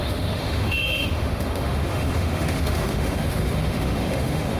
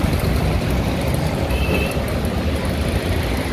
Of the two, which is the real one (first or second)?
second